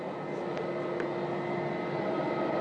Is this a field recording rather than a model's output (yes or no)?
yes